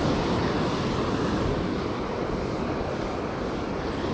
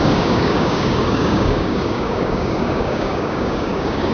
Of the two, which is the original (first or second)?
first